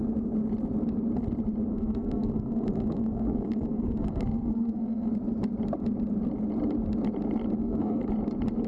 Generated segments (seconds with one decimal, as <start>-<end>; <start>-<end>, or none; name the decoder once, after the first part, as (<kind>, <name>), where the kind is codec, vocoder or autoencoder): 1.7-5.1 (codec, SNAC); 7.6-8.1